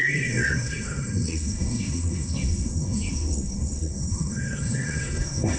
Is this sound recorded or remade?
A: remade